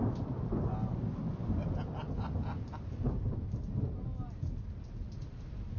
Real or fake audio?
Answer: real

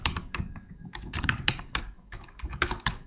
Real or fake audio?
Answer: fake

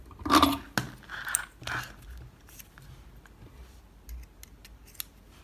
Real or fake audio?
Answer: real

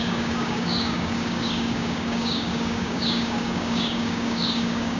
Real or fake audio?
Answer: fake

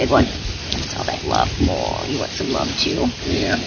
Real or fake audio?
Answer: real